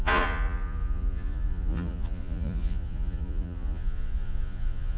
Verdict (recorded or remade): remade